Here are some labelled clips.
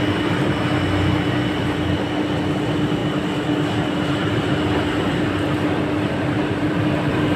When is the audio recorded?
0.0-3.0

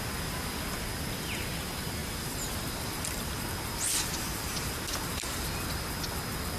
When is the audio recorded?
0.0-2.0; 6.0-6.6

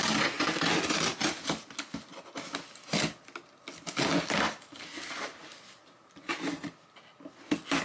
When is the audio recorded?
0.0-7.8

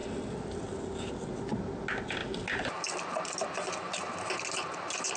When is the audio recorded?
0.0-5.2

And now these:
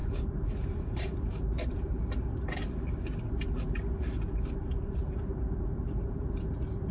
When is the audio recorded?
2.0-4.8

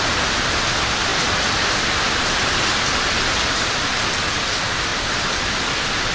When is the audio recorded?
4.9-6.1